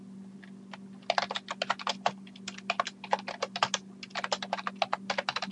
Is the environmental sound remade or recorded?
recorded